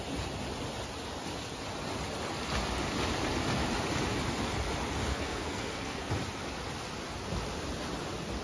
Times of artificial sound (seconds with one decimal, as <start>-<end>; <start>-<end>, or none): 5.1-6.1